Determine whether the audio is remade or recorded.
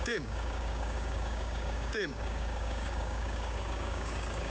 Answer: remade